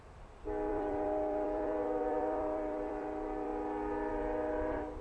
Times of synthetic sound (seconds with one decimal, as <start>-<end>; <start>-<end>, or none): 0.0-3.5; 4.1-5.0